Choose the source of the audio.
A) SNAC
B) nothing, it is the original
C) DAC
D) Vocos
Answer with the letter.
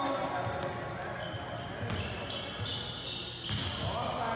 B